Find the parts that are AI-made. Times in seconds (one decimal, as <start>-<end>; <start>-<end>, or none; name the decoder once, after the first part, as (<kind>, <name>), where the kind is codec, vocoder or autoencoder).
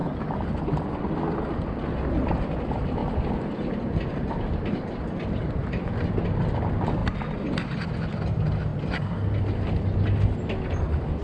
none